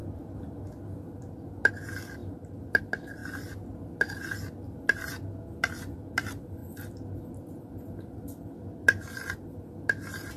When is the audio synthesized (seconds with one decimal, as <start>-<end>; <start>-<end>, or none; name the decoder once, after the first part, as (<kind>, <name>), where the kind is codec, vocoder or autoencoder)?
none